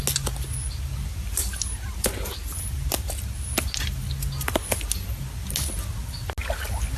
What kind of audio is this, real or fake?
real